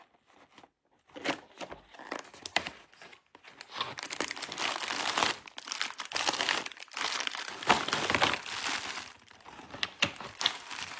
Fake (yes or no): no